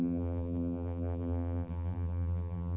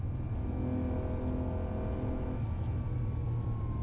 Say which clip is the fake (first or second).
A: first